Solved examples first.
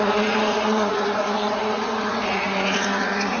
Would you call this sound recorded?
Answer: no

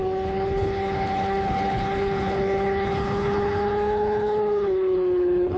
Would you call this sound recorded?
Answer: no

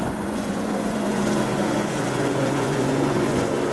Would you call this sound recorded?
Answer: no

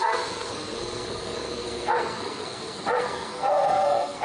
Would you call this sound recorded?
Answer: no